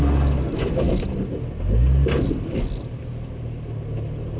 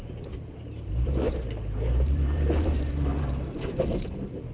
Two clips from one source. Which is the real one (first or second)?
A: first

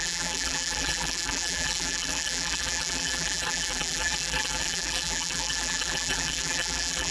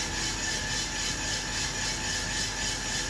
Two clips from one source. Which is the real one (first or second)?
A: second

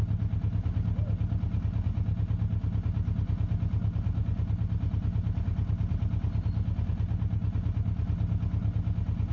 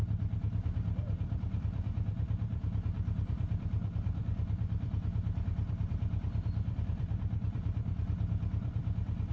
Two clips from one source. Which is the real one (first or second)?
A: first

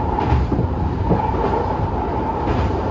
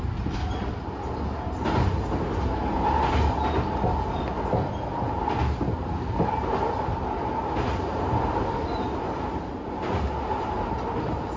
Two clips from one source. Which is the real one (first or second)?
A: second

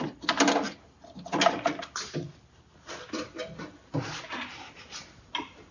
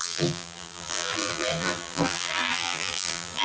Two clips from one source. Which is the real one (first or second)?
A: first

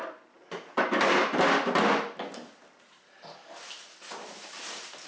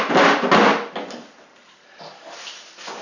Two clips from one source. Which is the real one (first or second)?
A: first